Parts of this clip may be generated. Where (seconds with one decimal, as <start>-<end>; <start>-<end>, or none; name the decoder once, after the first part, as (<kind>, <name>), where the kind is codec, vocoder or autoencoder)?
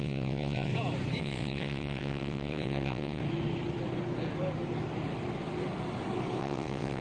0.0-0.7 (vocoder, WaveNeXt); 1.2-3.2; 6.4-7.0